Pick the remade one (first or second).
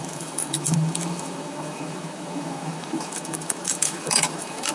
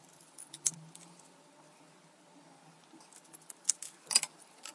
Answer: first